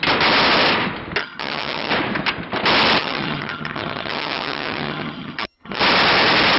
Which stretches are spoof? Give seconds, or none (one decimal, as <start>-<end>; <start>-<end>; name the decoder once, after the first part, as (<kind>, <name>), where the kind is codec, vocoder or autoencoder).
1.2-1.9 (vocoder, HiFi-GAN); 3.0-5.8